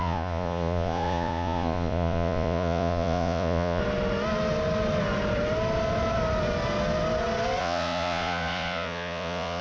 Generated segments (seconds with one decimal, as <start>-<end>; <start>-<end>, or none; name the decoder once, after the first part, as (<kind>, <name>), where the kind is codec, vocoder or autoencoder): 0.0-3.8 (vocoder, Vocos); 7.6-9.6

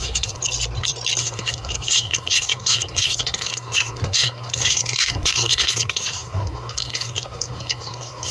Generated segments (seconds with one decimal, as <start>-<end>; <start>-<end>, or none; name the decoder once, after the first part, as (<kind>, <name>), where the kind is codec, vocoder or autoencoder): 0.0-0.4 (codec, SNAC); 1.2-8.3

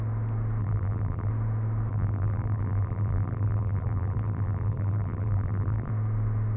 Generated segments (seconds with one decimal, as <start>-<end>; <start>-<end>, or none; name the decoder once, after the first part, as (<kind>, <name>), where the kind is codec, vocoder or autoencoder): 0.6-1.3 (vocoder, BigVGAN v2); 1.9-5.9

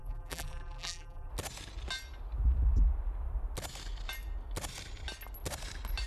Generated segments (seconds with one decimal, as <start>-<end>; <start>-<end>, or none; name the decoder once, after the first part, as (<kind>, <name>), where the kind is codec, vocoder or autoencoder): 0.0-1.3 (vocoder, BigVGAN v2)

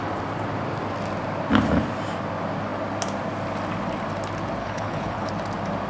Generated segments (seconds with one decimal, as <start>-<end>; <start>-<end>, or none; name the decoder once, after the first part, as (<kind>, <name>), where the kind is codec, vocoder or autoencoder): 4.6-5.3 (codec, HILCodec)

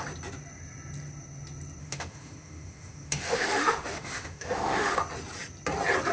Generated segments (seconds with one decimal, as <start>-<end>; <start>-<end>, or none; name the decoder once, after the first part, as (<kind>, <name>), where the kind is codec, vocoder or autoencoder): 1.8-5.0 (autoencoder, DAC-VAE)